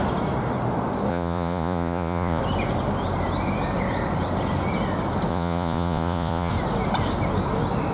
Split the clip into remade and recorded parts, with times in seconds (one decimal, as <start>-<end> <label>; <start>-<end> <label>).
0.0-1.1 recorded; 1.1-2.4 remade; 2.4-5.3 recorded; 5.3-6.5 remade; 6.5-7.9 recorded